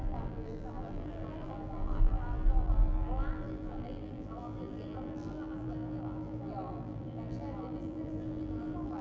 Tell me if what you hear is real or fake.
fake